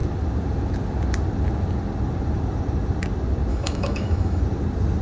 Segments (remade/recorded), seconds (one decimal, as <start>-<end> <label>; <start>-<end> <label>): 0.0-3.5 recorded; 3.5-4.4 remade; 4.4-5.0 recorded